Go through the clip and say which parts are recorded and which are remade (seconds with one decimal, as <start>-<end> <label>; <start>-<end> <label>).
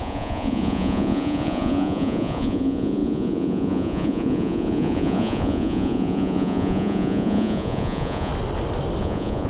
0.0-8.3 remade; 8.3-9.0 recorded; 9.0-9.5 remade